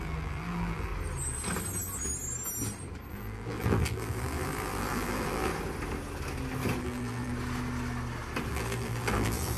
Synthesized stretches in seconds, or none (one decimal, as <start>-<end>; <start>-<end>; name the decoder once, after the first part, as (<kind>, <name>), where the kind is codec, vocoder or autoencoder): 0.0-0.9 (vocoder, BigVGAN v2); 3.1-5.5; 6.8-7.3; 8.5-9.6